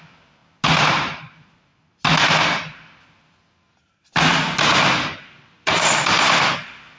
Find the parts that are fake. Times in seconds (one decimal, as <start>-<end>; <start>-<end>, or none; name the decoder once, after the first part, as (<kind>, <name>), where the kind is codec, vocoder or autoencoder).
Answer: none